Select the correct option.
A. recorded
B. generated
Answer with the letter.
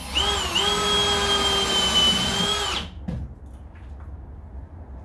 A